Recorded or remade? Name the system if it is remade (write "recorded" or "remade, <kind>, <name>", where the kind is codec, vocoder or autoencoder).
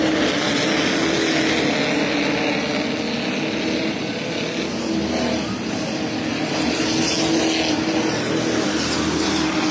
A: recorded